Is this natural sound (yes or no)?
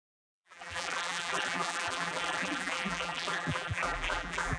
no